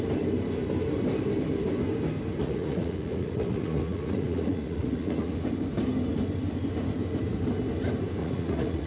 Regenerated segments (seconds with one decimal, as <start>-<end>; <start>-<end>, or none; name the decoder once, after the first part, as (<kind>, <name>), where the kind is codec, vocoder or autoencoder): 2.4-5.4 (vocoder, Vocos); 8.2-8.9